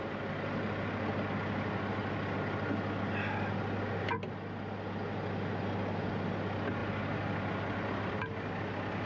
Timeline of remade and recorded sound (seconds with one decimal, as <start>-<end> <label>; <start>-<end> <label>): 0.0-9.1 recorded